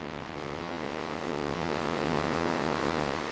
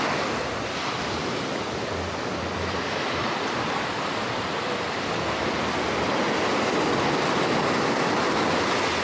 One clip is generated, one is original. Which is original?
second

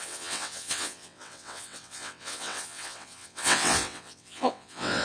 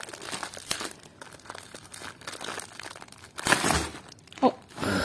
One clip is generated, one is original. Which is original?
second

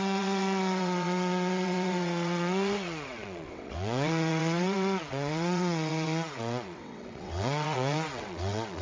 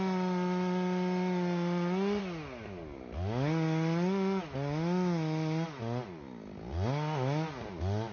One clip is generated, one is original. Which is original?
second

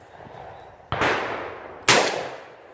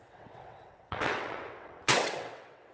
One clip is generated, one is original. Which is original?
first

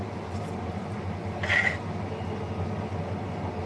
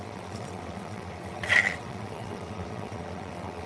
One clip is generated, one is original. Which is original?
first